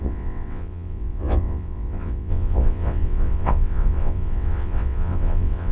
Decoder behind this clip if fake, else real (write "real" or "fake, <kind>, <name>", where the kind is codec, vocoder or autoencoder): fake, vocoder, WaveNeXt